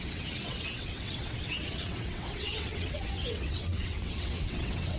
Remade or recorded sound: remade